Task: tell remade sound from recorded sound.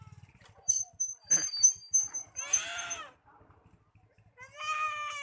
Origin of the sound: recorded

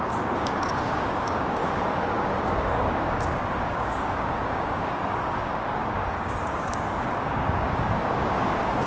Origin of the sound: remade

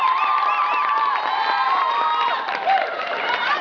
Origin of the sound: remade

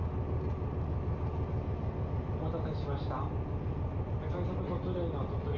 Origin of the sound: recorded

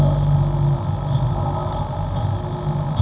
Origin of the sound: recorded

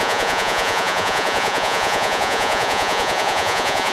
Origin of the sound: remade